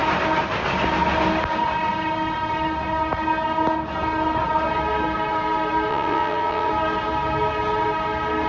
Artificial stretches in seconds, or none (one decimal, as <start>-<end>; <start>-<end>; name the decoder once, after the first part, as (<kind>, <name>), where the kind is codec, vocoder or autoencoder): 5.9-6.7 (vocoder, WaveNeXt)